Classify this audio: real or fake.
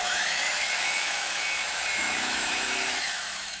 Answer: fake